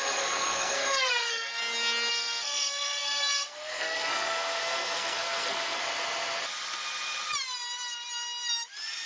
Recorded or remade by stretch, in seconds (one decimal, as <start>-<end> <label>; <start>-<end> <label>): 0.0-1.6 remade; 1.6-2.1 recorded; 2.1-5.8 remade; 5.8-9.1 recorded